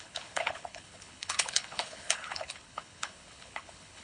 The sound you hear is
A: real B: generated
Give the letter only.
B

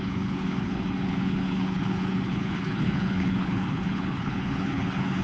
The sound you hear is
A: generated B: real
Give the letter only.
A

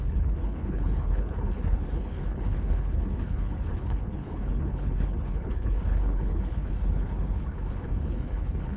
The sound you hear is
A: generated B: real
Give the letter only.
A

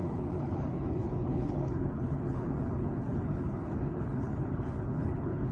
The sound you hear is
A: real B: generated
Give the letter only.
B